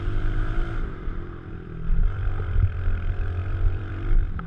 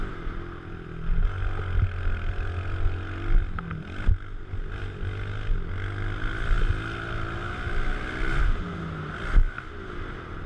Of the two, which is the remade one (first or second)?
first